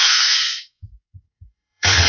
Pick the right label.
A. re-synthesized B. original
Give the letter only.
A